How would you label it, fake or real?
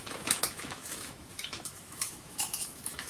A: fake